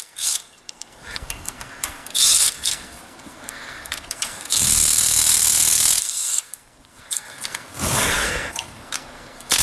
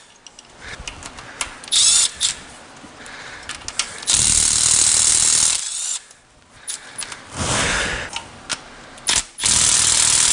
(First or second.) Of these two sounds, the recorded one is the second